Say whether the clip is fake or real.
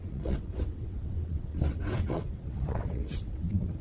fake